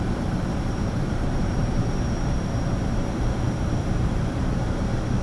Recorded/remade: remade